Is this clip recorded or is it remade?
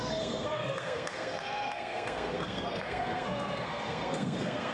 remade